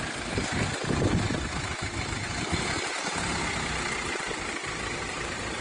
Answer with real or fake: fake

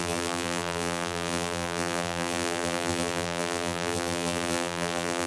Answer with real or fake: fake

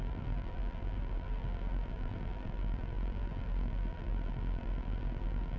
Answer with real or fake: fake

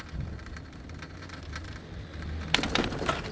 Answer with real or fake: real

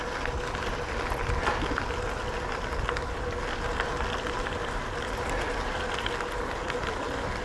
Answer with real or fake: real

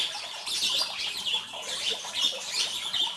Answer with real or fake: real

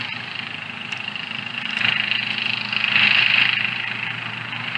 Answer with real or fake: real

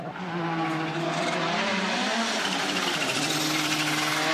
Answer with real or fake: real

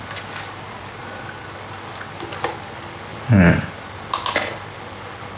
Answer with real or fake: real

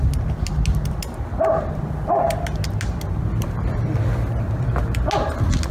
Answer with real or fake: real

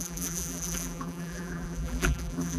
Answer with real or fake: fake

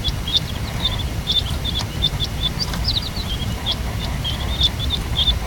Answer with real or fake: real